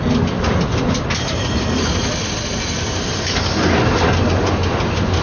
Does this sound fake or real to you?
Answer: real